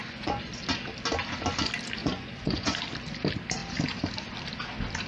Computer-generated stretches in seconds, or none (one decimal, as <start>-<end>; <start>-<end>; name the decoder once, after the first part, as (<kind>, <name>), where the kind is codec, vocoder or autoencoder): 0.0-0.5 (vocoder, Vocos); 2.0-2.7